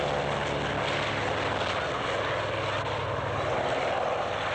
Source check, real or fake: real